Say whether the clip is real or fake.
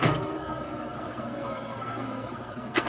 fake